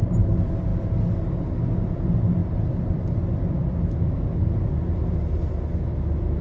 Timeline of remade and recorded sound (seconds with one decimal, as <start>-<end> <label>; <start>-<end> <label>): 0.0-2.4 recorded; 2.4-3.2 remade; 3.2-3.6 recorded; 3.6-4.3 remade; 4.3-6.4 recorded